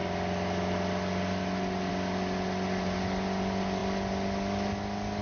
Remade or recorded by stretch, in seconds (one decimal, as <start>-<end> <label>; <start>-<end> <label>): 0.0-5.2 recorded